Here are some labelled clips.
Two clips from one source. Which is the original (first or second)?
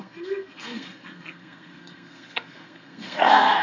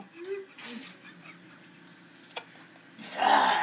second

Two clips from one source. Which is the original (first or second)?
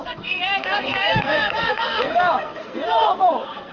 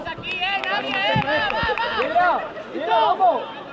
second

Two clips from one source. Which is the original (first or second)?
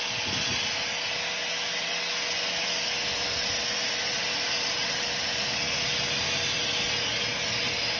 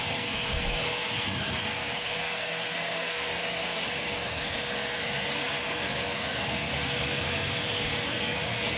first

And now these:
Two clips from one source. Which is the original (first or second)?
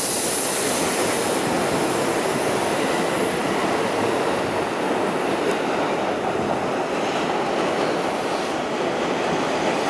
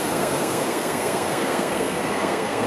first